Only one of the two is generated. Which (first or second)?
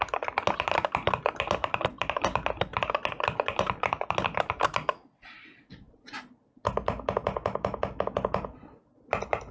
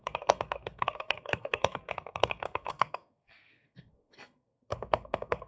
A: second